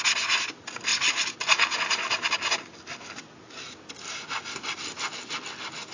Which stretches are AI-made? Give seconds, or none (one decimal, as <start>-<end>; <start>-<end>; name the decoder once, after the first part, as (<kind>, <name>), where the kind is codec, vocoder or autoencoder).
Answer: none